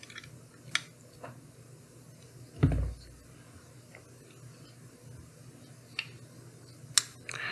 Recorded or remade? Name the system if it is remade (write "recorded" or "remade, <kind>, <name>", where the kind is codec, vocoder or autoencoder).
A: recorded